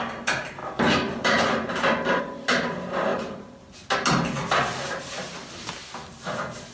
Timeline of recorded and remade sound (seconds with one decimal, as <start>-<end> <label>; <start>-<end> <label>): 0.0-0.6 recorded; 0.6-2.2 remade; 2.2-3.1 recorded; 3.1-3.6 remade; 3.6-4.7 recorded; 4.7-5.4 remade; 5.4-6.7 recorded